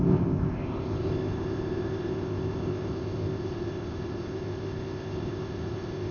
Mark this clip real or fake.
fake